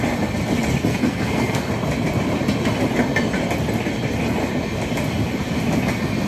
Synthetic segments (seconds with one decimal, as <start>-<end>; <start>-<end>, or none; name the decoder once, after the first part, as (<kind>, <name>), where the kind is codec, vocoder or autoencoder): 0.9-1.7 (codec, SNAC)